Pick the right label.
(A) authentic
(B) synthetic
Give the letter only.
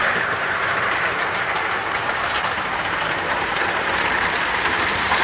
B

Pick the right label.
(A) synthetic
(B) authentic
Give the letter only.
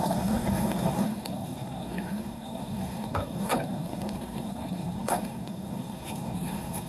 A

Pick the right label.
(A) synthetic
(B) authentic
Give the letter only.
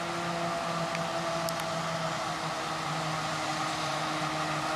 B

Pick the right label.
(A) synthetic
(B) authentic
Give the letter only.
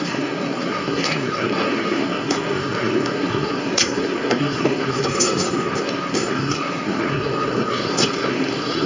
A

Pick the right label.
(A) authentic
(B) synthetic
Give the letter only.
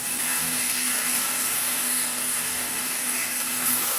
B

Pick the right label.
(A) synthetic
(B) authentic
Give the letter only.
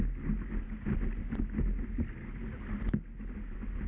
B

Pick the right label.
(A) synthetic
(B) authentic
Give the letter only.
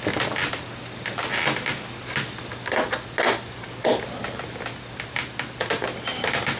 B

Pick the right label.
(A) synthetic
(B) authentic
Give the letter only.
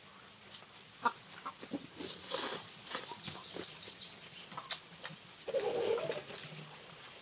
B